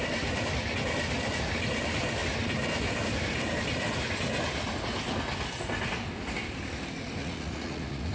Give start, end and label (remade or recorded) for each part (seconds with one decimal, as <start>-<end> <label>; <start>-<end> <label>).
0.0-7.2 recorded; 7.2-8.1 remade